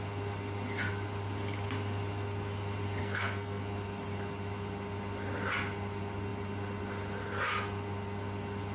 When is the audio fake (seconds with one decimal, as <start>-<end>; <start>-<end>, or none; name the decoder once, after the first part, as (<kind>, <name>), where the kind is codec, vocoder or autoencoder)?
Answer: 3.0-3.6 (codec, SNAC)